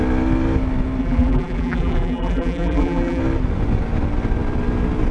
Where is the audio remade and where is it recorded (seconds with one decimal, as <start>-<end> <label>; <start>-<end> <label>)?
0.0-1.0 recorded; 1.0-3.2 remade; 3.2-5.1 recorded